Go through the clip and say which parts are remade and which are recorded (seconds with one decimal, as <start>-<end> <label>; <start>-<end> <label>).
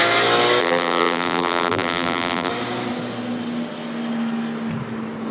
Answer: 0.0-0.6 recorded; 0.6-2.5 remade; 2.5-5.3 recorded